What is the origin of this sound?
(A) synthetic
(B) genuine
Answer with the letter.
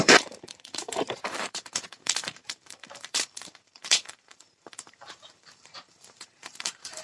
A